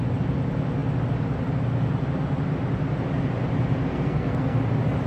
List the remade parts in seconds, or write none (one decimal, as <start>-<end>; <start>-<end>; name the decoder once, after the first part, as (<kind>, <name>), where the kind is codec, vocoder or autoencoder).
3.9-4.6 (codec, SNAC)